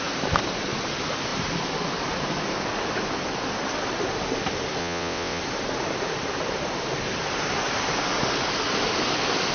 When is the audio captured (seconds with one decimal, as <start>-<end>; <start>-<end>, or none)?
0.0-4.8; 5.4-9.5